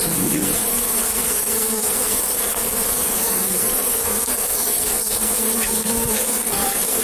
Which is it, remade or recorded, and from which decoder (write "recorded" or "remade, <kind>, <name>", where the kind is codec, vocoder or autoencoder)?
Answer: remade, codec, SNAC